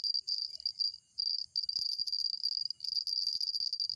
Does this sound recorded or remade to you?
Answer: recorded